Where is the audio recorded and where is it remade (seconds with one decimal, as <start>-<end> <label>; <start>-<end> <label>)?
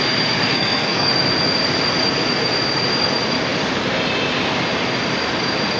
0.0-0.5 recorded; 0.5-1.1 remade; 1.1-5.8 recorded